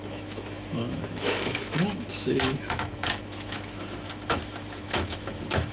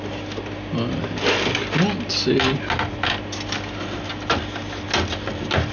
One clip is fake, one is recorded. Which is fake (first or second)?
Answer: first